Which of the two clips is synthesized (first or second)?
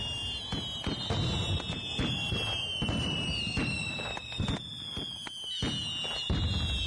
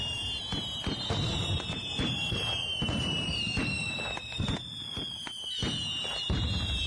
second